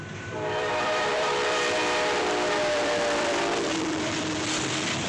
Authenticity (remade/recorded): remade